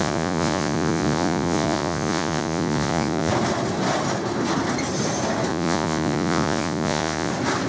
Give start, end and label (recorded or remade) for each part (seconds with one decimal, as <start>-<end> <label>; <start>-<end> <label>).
0.0-3.3 remade; 3.3-5.5 recorded; 5.5-7.3 remade; 7.3-7.7 recorded